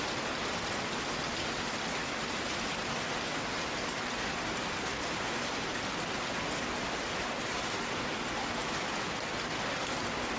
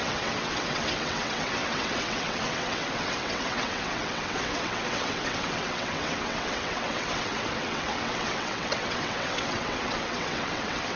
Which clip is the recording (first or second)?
first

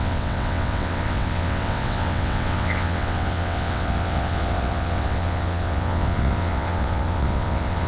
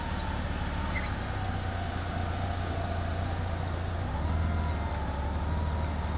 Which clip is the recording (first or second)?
second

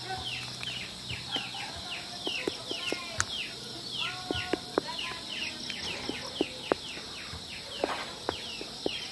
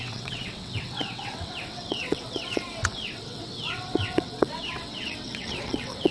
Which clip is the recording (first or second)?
first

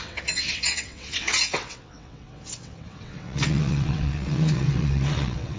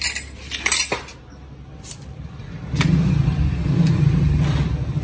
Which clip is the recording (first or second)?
second